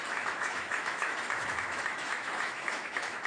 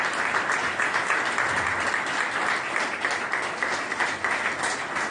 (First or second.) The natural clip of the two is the second